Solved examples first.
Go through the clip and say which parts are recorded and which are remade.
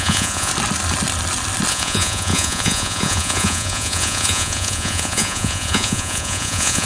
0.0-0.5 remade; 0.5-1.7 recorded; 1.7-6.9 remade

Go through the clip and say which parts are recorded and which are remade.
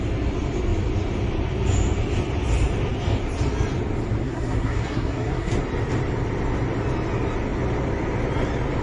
0.0-4.2 recorded; 4.2-5.5 remade; 5.5-8.8 recorded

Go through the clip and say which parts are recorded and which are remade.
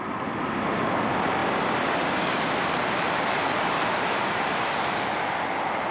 0.0-5.9 recorded